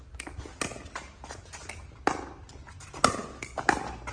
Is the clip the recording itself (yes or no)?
yes